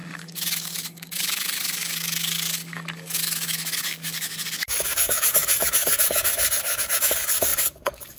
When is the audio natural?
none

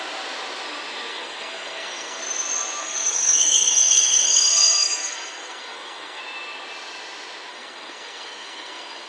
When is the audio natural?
0.0-1.1; 2.2-2.8; 6.2-7.5

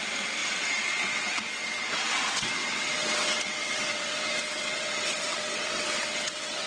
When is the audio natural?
none

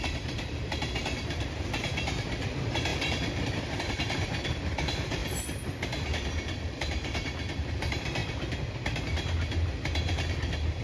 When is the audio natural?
5.2-6.1; 8.2-9.0

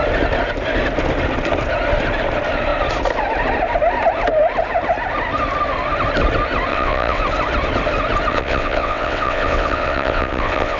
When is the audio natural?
0.0-6.7; 7.2-8.3

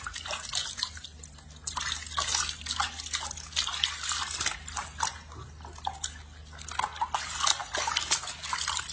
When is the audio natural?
0.0-8.9

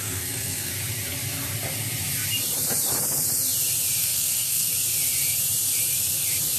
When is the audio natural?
0.7-4.0; 4.7-6.6

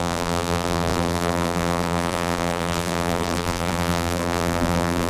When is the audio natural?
none